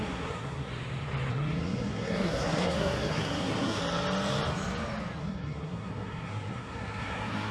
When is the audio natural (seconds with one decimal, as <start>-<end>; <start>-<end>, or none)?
0.7-1.3; 3.8-5.2